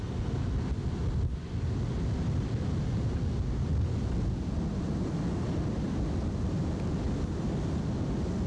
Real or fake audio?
real